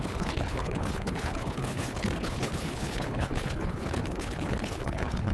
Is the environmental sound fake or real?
fake